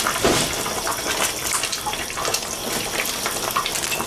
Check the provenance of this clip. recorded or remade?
recorded